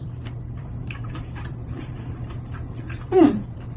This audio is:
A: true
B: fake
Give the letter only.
B